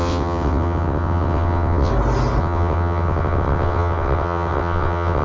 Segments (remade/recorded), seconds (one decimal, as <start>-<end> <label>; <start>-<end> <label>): 0.0-1.9 remade; 1.9-2.4 recorded; 2.4-5.2 remade